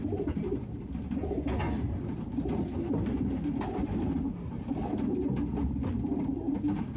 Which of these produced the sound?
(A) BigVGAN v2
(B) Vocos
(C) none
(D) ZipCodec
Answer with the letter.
C